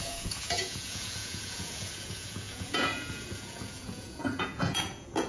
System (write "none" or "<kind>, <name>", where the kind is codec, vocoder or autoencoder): vocoder, Vocos